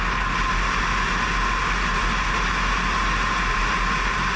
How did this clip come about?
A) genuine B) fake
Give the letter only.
A